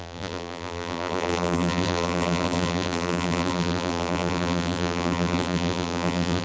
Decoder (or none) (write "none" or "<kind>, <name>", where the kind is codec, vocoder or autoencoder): vocoder, BigVGAN v2